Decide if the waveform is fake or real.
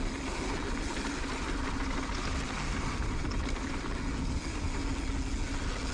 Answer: real